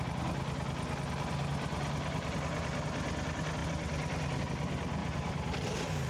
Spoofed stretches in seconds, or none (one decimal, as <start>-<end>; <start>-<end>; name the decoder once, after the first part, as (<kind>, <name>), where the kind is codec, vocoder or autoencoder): 3.6-4.4 (vocoder, BigVGAN v2); 5.0-6.1